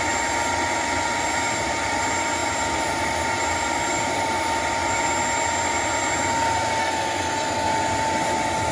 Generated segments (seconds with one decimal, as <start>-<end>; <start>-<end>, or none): 6.8-7.7